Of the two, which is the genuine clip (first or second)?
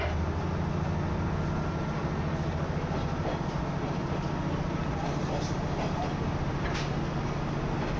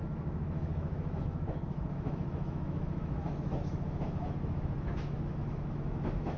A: first